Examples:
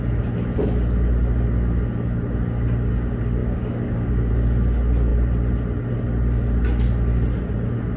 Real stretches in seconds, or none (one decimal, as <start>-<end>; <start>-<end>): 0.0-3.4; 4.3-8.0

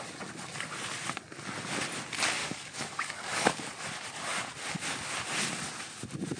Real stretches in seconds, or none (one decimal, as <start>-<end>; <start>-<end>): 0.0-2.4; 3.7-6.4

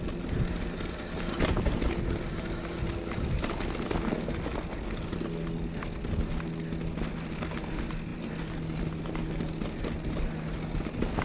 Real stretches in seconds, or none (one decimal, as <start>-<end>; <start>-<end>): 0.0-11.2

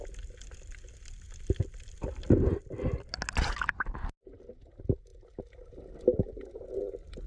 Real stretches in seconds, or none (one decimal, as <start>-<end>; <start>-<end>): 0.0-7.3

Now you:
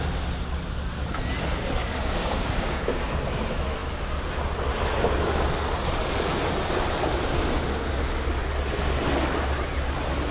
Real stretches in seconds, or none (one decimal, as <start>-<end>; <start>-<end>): 0.0-1.8; 3.1-10.3